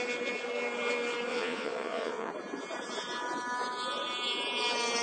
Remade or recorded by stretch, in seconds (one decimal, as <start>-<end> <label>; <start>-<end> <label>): 0.0-1.3 recorded; 1.3-2.3 remade; 2.3-5.0 recorded